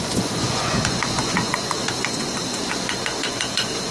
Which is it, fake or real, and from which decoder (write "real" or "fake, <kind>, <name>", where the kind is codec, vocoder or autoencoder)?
fake, vocoder, Vocos